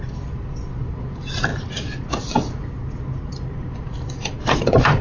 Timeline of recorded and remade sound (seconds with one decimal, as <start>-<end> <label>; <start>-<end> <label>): 0.0-1.5 remade; 1.5-3.8 recorded; 3.8-5.0 remade